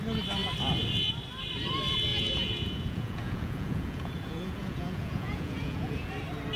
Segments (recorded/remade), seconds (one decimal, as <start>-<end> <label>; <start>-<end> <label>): 0.0-2.1 recorded; 2.1-6.1 remade; 6.1-6.6 recorded